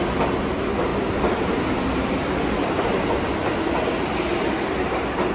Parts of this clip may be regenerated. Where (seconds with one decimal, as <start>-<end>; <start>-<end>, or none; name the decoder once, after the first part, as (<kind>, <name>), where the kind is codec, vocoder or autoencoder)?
none

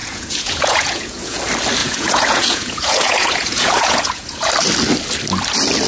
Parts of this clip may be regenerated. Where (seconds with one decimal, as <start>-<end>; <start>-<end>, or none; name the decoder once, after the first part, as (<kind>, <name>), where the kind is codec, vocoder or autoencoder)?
0.0-1.4 (vocoder, Vocos); 1.8-4.5

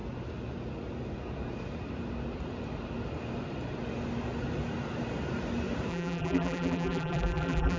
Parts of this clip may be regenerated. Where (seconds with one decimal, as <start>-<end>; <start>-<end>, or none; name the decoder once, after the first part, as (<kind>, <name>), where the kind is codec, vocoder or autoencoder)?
5.9-7.8 (vocoder, BigVGAN v2)

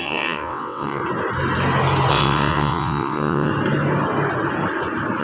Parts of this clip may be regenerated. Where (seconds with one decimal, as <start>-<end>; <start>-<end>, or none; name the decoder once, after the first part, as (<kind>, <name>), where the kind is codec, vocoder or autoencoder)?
0.0-1.0 (vocoder, WaveNeXt); 2.1-3.5

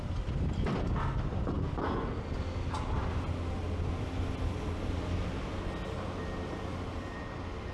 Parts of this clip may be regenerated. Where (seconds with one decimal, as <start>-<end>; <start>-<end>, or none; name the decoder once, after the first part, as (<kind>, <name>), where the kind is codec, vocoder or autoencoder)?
6.7-7.7 (vocoder, BigVGAN v2)

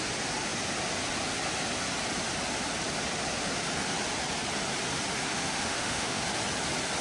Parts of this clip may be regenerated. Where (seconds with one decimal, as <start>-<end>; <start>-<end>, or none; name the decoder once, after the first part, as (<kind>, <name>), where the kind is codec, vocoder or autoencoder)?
5.3-6.2 (autoencoder, DAC-VAE)